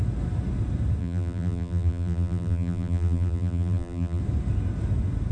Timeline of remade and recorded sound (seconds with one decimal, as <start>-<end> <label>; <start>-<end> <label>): 0.0-1.0 recorded; 1.0-4.2 remade; 4.2-5.3 recorded